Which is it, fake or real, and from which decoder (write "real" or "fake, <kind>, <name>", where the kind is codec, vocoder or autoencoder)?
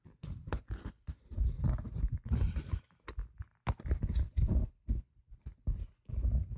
real